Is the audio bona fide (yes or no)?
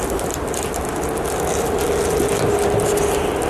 yes